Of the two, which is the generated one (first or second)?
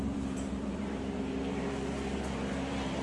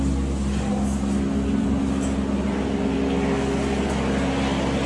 first